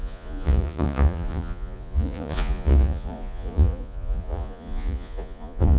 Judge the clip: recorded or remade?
remade